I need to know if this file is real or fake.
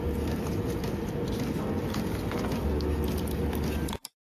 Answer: real